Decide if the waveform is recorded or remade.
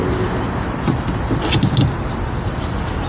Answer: recorded